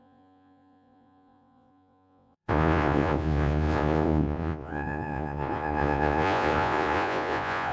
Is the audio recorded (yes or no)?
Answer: no